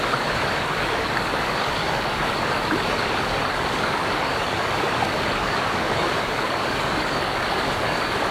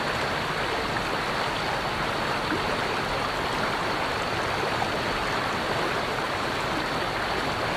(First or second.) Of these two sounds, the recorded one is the second